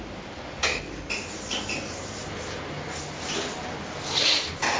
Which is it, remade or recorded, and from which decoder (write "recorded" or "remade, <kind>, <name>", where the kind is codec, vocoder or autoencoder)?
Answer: recorded